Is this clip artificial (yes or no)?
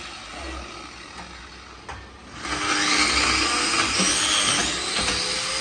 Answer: no